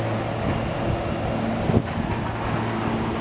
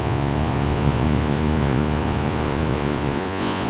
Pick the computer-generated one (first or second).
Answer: second